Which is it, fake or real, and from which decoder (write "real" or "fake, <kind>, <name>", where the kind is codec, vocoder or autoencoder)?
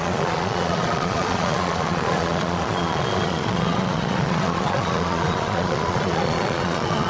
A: fake, vocoder, Vocos